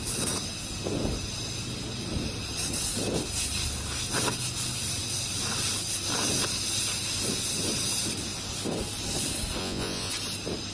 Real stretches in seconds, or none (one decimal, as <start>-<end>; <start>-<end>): 0.0-9.6; 10.1-10.7